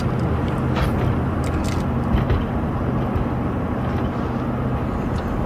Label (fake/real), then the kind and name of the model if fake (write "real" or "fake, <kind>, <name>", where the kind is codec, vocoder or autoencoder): real